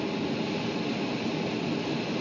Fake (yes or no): no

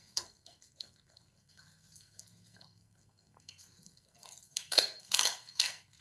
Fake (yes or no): yes